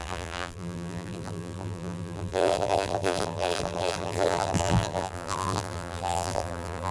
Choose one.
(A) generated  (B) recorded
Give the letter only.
A